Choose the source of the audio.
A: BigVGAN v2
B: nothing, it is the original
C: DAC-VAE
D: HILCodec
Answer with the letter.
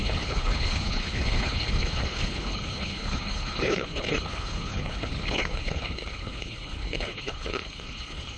D